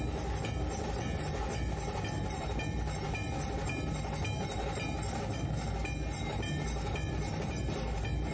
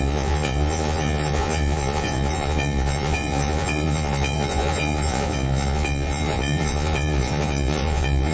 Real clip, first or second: first